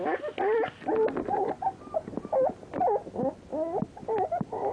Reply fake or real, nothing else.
real